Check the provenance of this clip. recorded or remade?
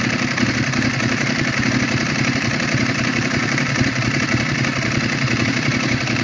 remade